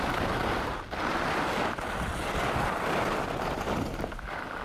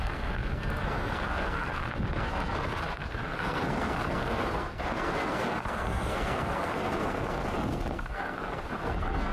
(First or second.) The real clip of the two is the first